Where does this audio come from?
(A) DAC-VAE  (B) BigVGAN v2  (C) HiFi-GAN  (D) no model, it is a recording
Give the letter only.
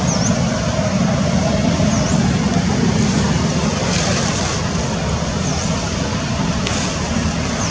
D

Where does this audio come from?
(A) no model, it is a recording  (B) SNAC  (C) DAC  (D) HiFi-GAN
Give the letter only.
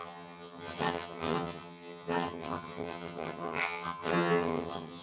D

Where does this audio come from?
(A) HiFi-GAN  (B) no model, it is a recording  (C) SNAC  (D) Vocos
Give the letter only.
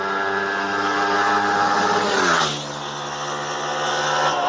B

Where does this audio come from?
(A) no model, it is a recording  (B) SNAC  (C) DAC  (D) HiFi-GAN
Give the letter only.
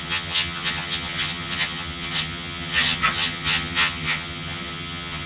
D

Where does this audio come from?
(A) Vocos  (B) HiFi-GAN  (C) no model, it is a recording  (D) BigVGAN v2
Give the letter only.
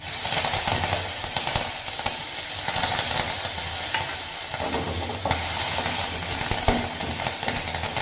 C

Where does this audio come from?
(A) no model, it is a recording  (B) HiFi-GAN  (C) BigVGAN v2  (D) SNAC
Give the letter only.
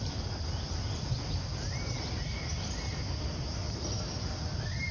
A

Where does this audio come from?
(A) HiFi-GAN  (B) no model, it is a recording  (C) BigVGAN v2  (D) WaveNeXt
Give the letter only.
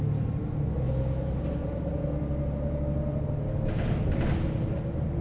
B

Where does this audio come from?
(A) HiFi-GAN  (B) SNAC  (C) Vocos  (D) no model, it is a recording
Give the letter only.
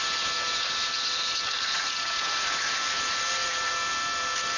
D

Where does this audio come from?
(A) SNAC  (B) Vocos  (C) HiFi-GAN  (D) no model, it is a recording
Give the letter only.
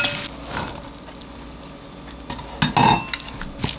D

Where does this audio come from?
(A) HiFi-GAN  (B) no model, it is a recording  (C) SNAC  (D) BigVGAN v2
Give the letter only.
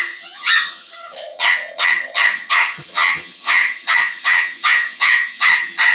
A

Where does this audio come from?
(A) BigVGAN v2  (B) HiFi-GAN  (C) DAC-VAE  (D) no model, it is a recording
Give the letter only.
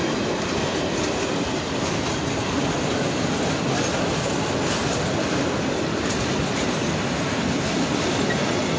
D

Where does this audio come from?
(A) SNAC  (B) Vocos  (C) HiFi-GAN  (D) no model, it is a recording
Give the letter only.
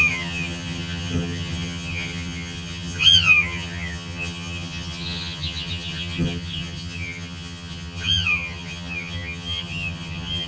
C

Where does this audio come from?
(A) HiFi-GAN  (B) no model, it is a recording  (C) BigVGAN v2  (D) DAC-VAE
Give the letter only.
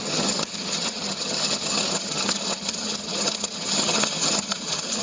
A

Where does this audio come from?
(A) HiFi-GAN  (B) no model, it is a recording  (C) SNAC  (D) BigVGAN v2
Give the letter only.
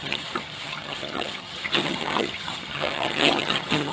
A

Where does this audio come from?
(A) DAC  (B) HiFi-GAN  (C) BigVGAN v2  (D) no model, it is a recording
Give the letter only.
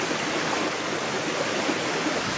D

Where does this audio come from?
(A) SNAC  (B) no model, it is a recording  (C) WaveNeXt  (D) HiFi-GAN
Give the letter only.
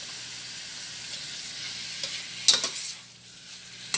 B